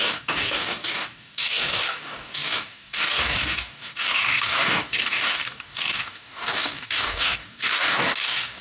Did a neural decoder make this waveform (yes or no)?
yes